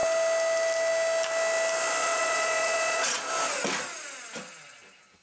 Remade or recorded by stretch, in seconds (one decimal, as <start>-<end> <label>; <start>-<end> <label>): 0.0-2.0 recorded; 2.0-3.3 remade; 3.3-5.2 recorded